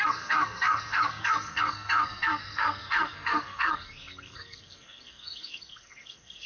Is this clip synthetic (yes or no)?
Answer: yes